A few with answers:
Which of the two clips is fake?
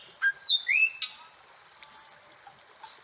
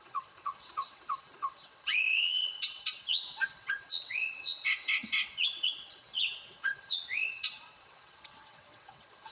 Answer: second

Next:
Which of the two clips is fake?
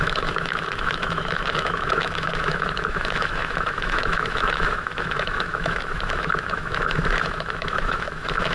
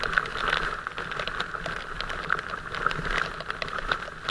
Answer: first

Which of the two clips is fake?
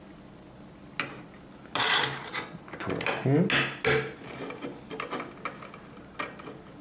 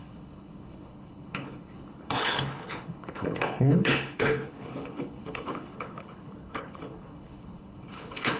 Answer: second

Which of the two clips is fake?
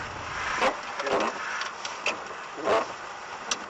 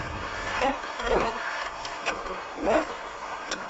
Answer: second